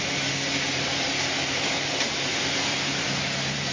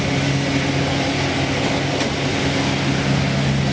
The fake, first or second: first